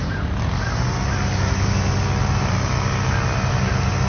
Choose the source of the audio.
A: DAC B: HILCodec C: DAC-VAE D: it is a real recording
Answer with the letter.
D